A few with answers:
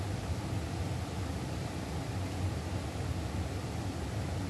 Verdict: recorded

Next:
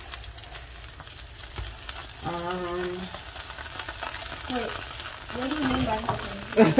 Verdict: recorded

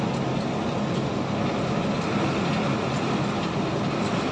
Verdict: recorded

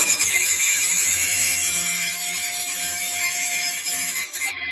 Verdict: remade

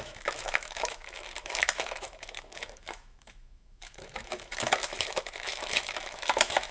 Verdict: remade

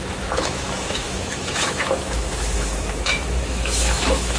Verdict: remade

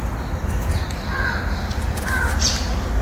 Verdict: recorded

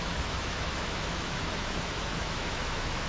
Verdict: remade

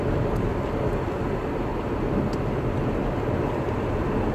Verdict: recorded